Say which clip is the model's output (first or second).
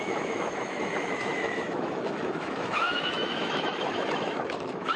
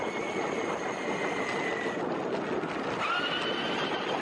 first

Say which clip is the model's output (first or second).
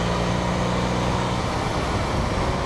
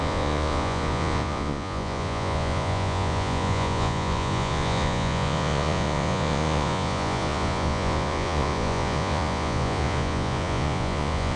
second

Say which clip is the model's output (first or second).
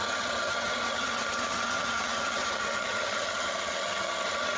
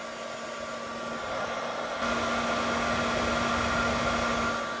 first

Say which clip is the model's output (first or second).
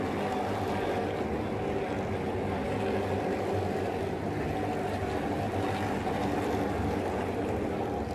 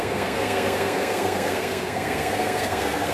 second